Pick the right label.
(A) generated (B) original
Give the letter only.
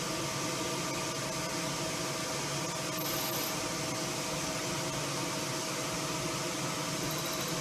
B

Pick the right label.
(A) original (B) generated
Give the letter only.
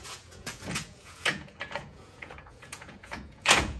B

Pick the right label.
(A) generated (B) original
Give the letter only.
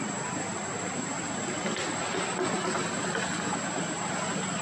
B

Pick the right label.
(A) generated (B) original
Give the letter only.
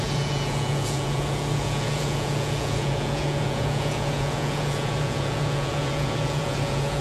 A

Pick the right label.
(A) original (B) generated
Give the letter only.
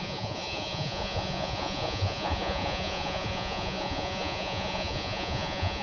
B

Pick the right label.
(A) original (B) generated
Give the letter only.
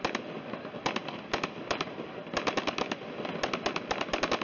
A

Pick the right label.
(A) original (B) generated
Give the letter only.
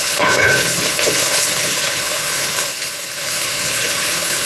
B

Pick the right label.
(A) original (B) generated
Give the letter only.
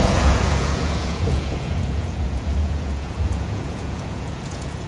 B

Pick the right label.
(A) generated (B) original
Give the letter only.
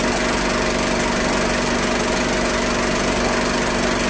B